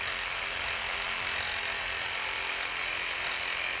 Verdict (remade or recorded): recorded